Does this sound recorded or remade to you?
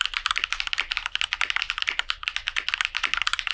remade